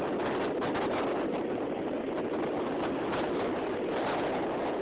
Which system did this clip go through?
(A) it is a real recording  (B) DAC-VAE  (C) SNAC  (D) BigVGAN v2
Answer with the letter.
A